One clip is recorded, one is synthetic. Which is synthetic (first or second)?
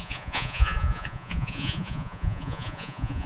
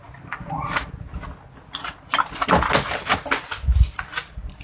first